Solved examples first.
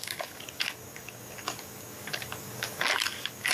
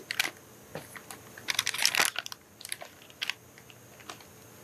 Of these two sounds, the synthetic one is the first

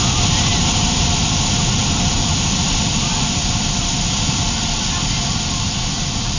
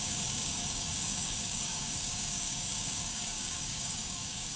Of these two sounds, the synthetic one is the second